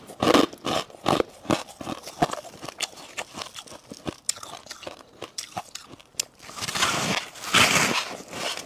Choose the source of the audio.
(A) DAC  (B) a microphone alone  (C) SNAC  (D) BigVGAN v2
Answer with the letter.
B